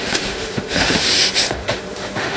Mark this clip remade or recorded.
remade